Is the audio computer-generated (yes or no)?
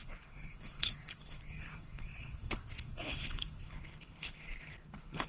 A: yes